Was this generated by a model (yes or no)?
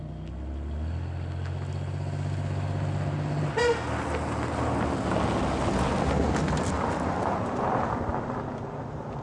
no